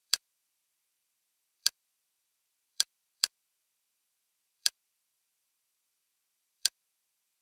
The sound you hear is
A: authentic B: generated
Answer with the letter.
B